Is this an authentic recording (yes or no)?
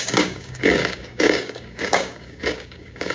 no